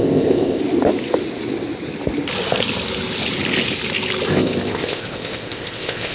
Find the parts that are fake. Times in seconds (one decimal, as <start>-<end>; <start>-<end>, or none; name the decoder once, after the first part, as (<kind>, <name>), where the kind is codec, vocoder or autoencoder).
0.0-0.6 (codec, ZipCodec); 4.3-6.1